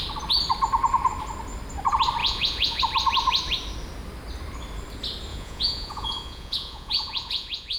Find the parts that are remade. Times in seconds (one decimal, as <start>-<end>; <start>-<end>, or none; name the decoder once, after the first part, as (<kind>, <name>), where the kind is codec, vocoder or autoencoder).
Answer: 2.2-2.8 (vocoder, Vocos); 5.3-7.8